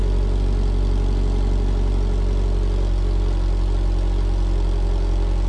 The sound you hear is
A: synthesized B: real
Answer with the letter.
B